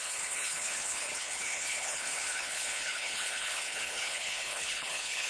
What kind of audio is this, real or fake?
fake